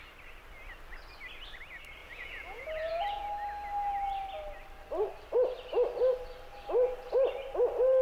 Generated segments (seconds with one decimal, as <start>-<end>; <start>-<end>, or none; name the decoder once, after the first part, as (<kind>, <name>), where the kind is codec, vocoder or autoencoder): 2.0-3.3 (vocoder, Vocos)